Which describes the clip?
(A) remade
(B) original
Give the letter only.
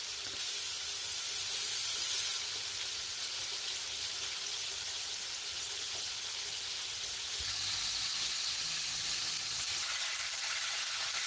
B